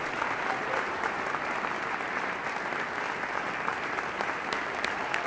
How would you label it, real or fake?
real